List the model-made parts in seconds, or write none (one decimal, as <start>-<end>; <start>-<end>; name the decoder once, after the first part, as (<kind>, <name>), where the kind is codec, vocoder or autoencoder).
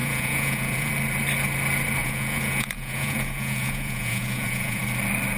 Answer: 0.0-0.9 (vocoder, Vocos); 2.0-4.8